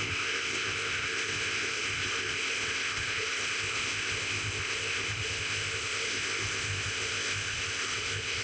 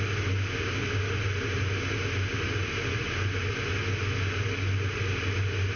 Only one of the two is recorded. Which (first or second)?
second